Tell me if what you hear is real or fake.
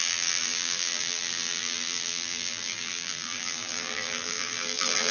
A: fake